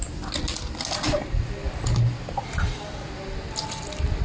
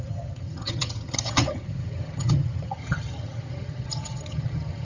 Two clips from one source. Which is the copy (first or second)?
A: second